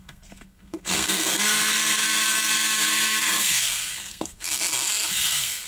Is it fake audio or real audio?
fake